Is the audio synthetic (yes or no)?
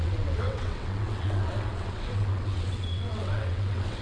yes